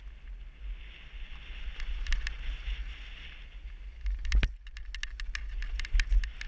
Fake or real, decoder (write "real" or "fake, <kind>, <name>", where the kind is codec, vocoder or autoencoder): real